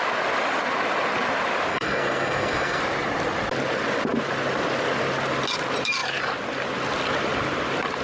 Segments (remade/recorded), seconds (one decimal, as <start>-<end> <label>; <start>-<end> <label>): 0.0-1.7 recorded; 1.7-2.8 remade; 2.8-8.0 recorded